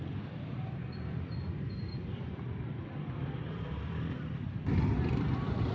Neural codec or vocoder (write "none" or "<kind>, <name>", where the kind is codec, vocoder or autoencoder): vocoder, BigVGAN v2